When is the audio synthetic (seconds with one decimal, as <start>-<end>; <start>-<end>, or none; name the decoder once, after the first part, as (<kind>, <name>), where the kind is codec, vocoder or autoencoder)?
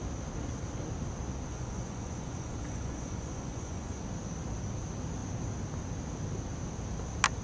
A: 1.5-4.0 (vocoder, Vocos)